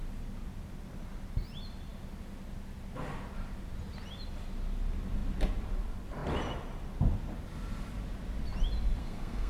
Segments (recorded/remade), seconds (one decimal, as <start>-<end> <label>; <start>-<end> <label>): 0.0-9.0 recorded; 9.0-9.5 remade